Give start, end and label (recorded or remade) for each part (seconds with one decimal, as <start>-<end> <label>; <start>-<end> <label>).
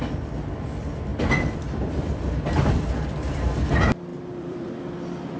0.0-4.1 recorded; 4.1-4.7 remade; 4.7-5.4 recorded